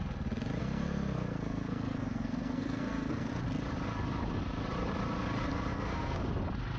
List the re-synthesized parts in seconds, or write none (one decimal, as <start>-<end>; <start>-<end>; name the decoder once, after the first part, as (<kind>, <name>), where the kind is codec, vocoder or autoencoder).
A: 0.6-3.3 (codec, SNAC); 5.7-6.2